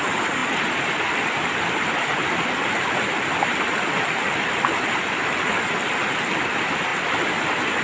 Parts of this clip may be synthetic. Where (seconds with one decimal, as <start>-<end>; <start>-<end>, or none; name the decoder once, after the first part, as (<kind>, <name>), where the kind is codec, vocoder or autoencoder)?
none